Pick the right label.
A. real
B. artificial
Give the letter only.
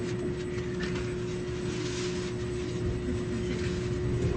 A